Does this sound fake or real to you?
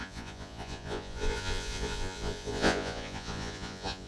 fake